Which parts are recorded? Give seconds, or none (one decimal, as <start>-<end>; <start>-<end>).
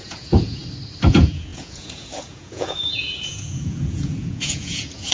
0.6-1.1